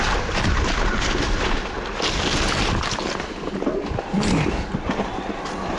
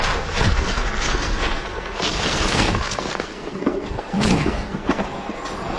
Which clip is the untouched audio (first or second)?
first